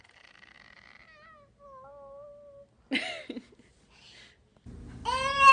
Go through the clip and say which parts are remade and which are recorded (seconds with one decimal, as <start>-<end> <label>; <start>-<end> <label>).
0.0-5.5 recorded